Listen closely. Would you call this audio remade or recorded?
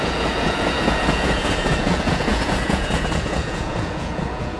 remade